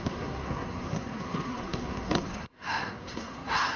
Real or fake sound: fake